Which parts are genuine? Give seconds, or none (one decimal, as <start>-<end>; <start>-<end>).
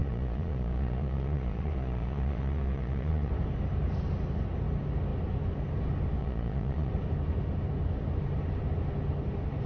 3.3-6.2; 6.9-9.7